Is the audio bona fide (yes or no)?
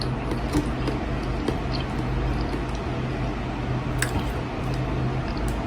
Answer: yes